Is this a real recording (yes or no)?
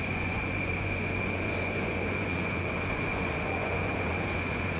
no